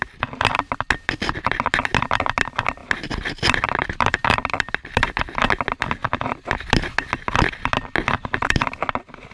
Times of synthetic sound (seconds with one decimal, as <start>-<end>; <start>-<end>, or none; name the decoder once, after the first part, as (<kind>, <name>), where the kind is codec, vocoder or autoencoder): none